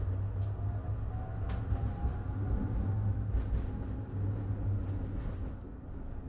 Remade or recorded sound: recorded